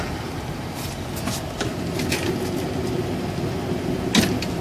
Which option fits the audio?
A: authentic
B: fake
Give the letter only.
A